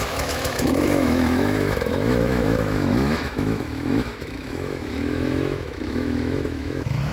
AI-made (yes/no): yes